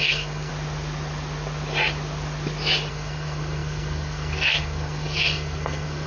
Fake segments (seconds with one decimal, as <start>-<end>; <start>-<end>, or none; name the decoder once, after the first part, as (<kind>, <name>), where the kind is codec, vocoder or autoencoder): 0.0-0.5 (codec, SNAC); 2.9-6.1